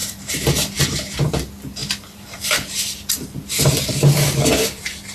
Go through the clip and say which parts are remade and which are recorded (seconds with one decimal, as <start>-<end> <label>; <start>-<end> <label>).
0.0-0.8 remade; 0.8-1.8 recorded; 1.8-3.9 remade; 3.9-5.1 recorded

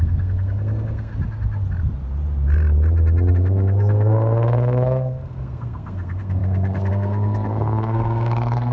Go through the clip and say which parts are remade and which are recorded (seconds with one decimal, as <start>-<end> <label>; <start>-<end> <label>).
0.0-1.1 remade; 1.1-3.3 recorded; 3.3-8.7 remade